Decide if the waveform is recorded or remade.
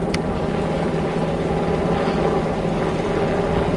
recorded